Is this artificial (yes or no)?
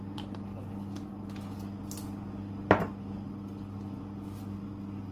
no